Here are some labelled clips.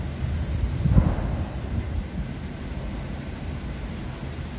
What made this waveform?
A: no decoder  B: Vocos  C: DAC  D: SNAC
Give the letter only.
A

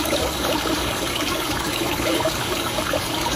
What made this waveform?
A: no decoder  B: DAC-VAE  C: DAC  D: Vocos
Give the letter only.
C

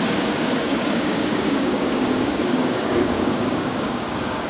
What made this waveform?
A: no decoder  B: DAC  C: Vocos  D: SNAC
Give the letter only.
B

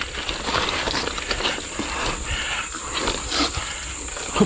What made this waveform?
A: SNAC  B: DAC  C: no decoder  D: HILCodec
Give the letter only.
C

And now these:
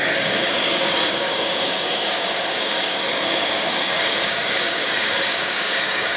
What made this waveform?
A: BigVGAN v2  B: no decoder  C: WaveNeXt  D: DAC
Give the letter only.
D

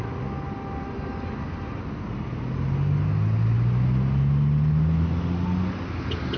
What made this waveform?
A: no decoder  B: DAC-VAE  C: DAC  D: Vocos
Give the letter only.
A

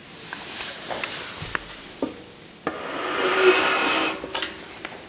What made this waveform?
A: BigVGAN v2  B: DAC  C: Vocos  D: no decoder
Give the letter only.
D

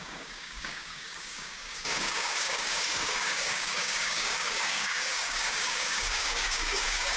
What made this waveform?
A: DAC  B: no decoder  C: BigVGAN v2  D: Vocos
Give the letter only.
A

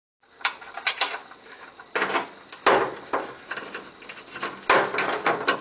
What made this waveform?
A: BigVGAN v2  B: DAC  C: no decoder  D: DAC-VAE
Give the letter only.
C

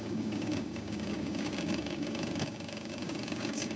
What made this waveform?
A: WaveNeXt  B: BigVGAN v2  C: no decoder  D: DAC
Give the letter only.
D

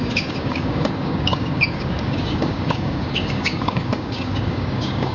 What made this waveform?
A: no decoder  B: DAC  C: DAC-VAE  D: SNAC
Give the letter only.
B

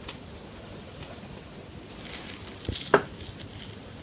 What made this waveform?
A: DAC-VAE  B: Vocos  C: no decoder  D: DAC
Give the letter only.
C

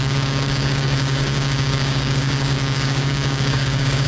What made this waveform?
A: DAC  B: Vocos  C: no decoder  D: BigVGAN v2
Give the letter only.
A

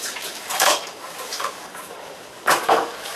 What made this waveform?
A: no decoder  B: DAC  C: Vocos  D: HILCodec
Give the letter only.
B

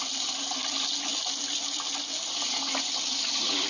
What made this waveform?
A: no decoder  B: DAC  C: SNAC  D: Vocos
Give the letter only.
A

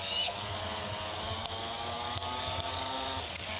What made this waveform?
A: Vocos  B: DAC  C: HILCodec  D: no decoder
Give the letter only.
B